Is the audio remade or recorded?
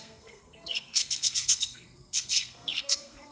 remade